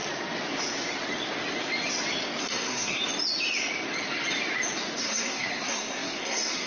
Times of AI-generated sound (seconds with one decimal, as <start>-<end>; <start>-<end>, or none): 2.4-3.0; 5.0-6.7